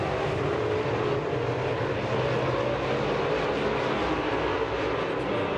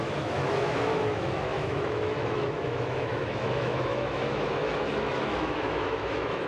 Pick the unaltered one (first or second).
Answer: first